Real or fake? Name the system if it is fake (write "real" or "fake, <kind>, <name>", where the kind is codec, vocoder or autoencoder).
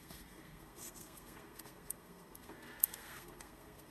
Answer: fake, codec, SNAC